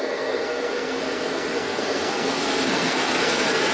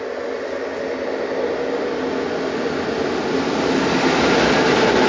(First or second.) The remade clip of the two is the first